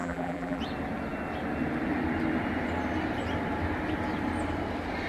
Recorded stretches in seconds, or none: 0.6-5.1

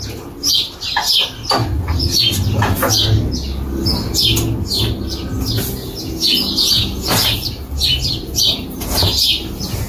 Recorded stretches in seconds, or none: 0.0-9.9

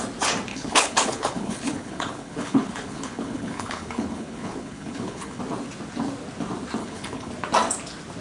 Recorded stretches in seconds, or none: 0.0-0.5; 5.4-6.8; 7.3-8.2

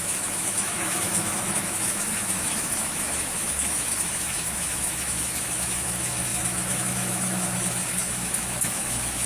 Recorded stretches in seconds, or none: none

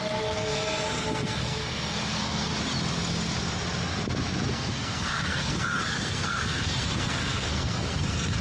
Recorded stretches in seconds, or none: 2.5-4.5

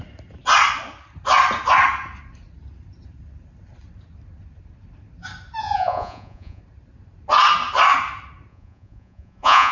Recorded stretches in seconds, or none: 0.0-5.6; 6.6-8.5

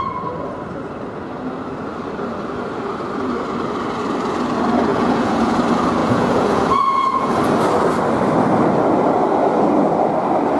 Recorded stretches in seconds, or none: 0.0-4.9; 5.6-6.0; 7.3-10.6

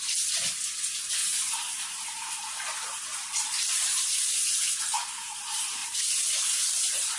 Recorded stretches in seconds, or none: 0.0-1.2; 4.8-5.8